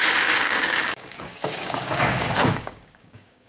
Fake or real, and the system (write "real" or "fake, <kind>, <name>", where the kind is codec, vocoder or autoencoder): fake, codec, DAC